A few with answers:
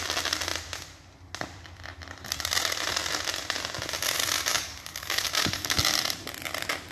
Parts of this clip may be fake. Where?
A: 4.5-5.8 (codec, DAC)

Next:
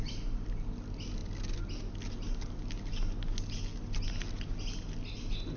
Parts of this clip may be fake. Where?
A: none

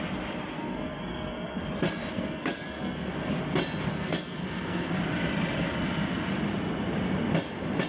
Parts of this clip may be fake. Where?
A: 0.5-1.6 (codec, SNAC); 2.1-3.1; 3.9-4.9

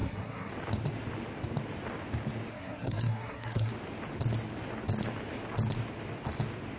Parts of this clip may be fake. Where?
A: 0.0-0.5 (codec, SNAC); 2.5-3.7

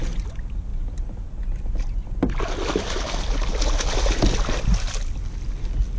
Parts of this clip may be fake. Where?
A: none

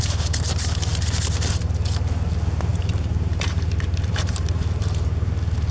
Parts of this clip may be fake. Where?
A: 2.7-5.3 (vocoder, BigVGAN v2)

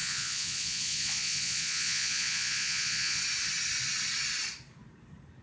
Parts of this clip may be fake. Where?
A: 0.0-3.2 (vocoder, Vocos)